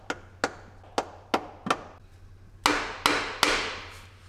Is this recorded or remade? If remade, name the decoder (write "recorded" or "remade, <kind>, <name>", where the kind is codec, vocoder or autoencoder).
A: recorded